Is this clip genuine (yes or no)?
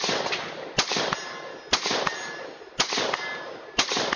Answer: yes